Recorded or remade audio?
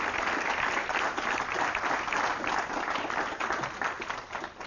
recorded